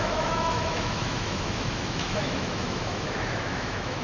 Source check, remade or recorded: remade